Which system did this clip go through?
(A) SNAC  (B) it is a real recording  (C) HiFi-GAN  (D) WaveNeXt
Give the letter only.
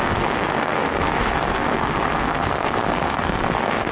A